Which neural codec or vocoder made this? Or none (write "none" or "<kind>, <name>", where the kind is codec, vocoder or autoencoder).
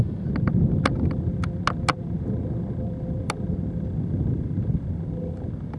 none